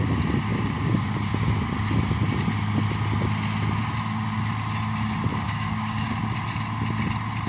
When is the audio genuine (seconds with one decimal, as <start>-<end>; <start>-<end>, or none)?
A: 0.0-0.5; 1.6-5.3; 6.2-7.5